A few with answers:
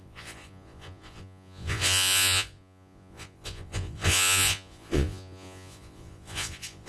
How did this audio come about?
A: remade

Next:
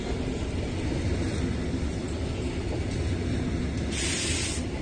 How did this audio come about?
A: recorded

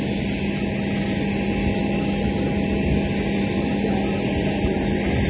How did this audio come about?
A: recorded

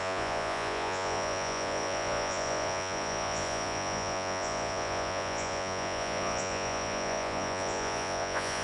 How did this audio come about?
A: remade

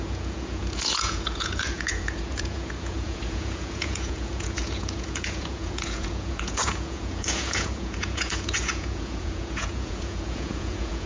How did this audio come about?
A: remade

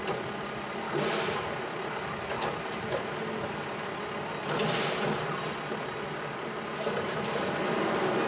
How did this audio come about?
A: recorded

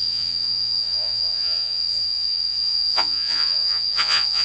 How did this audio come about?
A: remade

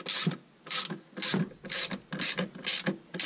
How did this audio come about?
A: recorded